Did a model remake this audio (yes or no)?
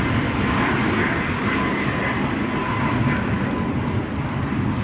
no